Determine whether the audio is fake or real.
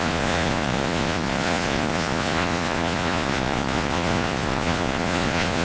fake